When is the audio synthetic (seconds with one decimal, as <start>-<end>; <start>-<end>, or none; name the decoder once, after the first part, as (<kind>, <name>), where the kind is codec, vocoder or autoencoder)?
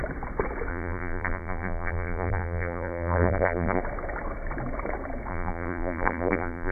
0.7-3.8 (vocoder, BigVGAN v2); 5.3-6.7